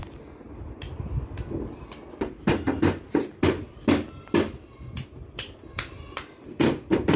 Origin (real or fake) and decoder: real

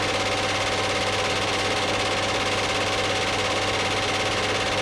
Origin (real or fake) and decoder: real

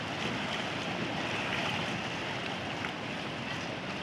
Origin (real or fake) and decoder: real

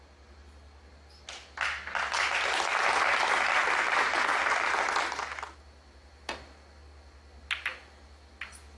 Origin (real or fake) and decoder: real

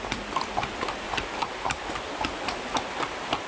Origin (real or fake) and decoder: real